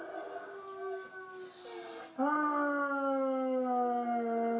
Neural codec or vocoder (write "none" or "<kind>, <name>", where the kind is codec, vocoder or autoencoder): none